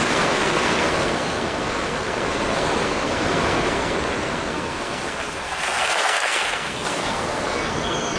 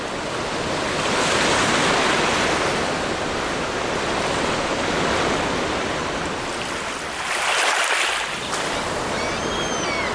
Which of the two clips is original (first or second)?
second